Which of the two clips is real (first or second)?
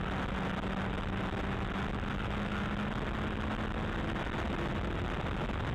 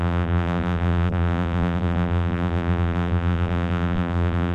first